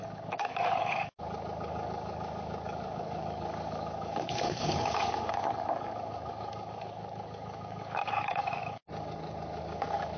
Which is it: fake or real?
fake